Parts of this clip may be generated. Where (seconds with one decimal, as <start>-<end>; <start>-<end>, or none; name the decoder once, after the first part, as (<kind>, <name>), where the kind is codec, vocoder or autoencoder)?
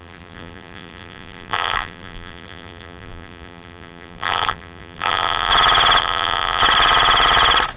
0.0-5.5 (vocoder, BigVGAN v2); 6.0-6.6